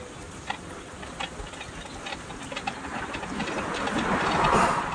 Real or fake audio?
real